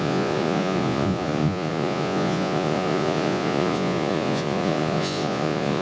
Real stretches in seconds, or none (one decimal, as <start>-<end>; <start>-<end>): none